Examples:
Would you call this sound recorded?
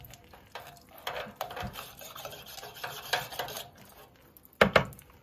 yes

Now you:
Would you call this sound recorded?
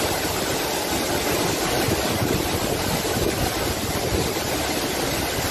no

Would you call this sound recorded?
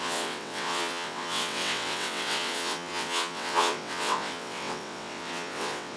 no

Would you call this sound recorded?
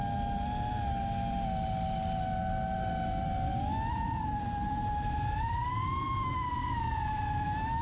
yes